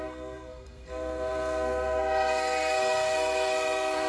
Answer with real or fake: fake